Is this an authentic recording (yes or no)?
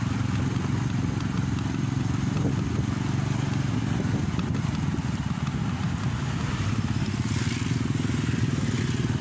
yes